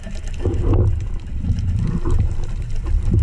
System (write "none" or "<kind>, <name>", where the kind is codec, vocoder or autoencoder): none